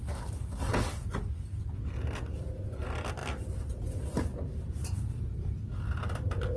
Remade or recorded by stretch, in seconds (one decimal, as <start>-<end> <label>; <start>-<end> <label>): 0.0-6.6 recorded